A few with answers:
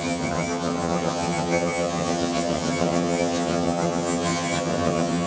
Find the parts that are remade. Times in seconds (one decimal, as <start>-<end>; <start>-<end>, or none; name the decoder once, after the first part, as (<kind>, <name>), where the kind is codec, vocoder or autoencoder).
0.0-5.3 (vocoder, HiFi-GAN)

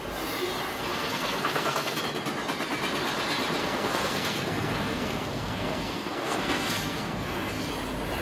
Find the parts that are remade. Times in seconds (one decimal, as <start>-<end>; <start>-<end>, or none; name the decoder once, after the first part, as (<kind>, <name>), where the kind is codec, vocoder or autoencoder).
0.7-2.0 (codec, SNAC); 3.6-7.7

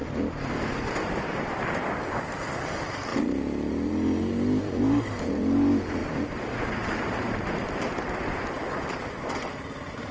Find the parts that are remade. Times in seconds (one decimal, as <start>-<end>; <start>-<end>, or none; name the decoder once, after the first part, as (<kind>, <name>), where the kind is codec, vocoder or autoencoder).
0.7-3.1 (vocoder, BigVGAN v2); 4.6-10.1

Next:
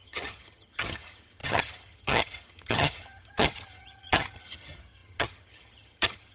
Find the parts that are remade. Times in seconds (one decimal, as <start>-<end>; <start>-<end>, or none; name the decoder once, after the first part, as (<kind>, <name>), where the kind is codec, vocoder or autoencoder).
0.0-6.3 (vocoder, HiFi-GAN)

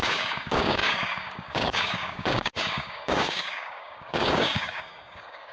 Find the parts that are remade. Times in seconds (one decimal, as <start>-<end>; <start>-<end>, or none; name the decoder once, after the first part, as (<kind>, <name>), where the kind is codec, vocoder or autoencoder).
0.0-5.5 (codec, DAC)